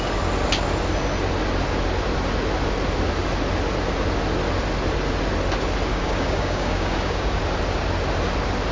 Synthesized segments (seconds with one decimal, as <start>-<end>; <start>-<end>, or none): 5.9-7.4